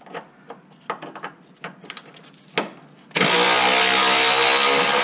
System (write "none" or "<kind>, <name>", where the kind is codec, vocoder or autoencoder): none